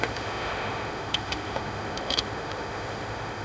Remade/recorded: remade